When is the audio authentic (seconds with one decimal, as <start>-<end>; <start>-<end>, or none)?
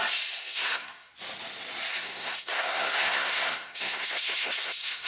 0.0-0.4; 1.1-1.9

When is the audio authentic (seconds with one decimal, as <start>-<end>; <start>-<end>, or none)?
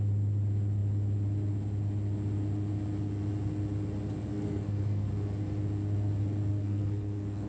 0.0-4.3; 5.1-6.5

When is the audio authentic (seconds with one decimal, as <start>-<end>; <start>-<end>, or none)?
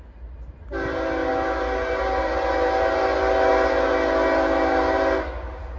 0.0-5.8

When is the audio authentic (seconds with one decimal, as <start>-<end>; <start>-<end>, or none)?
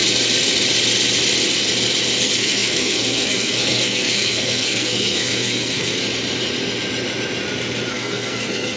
0.0-2.2; 6.0-7.9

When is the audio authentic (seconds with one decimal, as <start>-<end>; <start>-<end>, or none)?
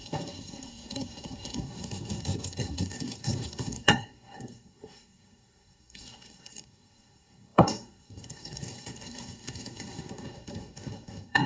none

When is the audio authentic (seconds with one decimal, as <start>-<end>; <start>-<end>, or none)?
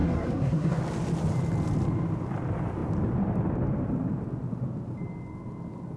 0.8-6.0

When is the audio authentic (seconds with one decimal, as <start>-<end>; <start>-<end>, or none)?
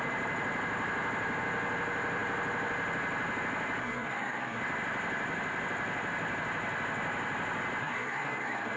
0.0-3.8; 4.6-7.8